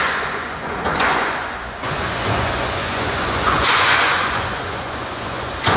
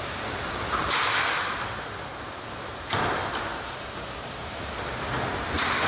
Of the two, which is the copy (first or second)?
first